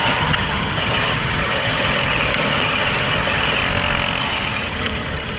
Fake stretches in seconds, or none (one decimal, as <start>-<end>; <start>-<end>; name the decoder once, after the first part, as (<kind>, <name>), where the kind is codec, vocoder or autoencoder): 0.0-3.6 (vocoder, HiFi-GAN); 4.2-5.4